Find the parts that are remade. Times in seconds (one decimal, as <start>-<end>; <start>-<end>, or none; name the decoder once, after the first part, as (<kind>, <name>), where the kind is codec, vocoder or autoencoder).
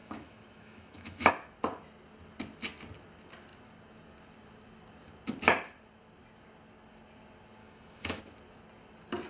0.0-1.3 (autoencoder, DAC-VAE); 7.6-8.2